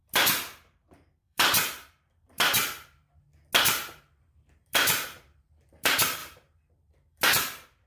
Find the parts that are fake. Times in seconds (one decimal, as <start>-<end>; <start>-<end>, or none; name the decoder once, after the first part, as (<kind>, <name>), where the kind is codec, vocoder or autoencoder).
0.0-3.0 (vocoder, BigVGAN v2); 3.7-7.9